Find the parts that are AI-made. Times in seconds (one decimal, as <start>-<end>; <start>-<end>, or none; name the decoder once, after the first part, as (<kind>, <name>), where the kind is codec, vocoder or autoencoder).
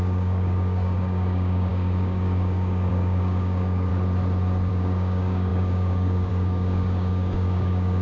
0.0-3.9 (codec, DAC); 4.7-8.0